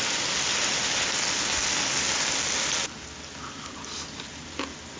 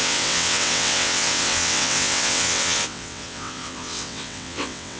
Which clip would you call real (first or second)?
first